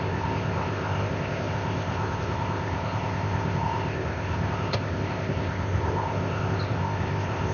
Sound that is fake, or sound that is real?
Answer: fake